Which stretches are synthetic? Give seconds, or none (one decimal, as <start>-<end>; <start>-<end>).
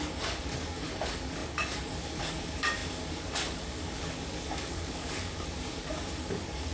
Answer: 0.0-6.7